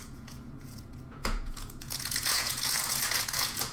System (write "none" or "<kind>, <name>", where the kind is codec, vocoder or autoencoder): vocoder, Vocos